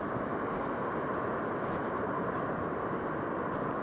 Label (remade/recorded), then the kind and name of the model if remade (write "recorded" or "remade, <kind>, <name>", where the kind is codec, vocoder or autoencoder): recorded